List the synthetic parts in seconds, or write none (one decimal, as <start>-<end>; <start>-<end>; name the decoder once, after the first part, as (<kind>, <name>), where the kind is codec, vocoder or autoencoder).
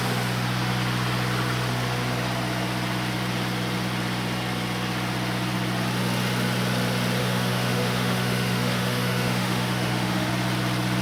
7.2-10.3 (autoencoder, DAC-VAE)